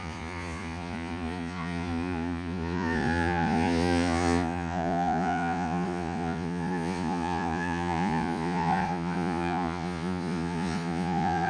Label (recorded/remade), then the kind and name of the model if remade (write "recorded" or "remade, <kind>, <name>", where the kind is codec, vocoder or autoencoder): remade, vocoder, Vocos